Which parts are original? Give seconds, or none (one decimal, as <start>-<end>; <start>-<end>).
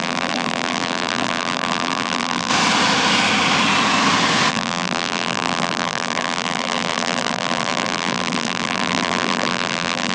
2.5-4.5